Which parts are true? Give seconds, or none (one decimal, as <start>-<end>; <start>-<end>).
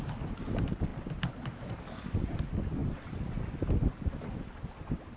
0.0-5.2